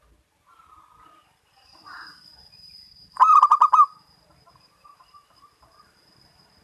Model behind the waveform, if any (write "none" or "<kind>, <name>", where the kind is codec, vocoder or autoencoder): vocoder, BigVGAN v2